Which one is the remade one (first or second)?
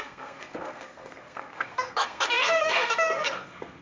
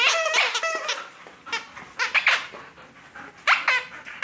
first